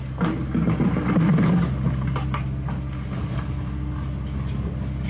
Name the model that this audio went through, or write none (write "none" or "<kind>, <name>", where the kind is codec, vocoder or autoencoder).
none